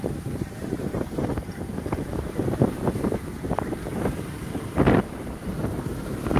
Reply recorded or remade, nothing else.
remade